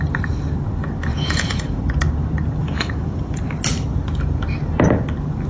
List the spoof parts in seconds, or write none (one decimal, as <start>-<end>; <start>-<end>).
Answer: 1.1-1.8; 2.6-3.4